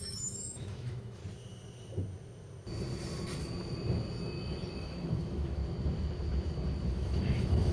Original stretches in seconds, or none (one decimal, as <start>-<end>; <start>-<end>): 1.2-4.8; 5.6-6.9